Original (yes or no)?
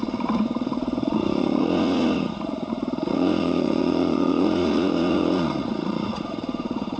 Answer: no